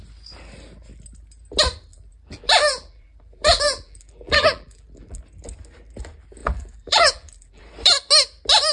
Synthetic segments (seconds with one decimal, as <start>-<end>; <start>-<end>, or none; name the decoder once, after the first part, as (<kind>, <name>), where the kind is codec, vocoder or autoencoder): 1.9-5.2 (vocoder, BigVGAN v2); 6.4-7.6